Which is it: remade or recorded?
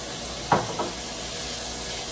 recorded